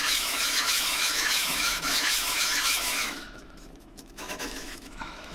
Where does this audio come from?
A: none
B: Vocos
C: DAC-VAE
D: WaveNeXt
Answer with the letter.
C